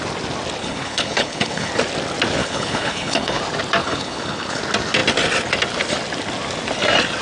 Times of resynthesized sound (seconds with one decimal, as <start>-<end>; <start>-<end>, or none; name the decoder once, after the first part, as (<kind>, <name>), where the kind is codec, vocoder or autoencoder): 0.6-1.7 (codec, HILCodec); 2.4-3.4; 3.8-4.6